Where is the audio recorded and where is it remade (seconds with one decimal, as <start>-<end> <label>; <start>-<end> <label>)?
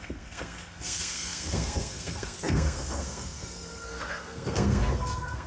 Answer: 0.0-5.5 remade